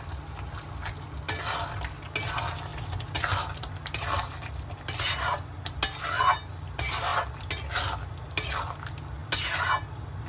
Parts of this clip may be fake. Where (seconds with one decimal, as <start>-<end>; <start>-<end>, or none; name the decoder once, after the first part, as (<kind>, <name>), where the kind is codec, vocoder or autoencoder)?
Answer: none